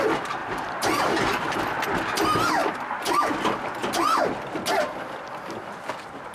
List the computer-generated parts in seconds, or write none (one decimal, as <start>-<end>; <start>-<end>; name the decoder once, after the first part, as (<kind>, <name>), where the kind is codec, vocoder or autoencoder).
0.4-1.6 (vocoder, BigVGAN v2); 2.6-3.3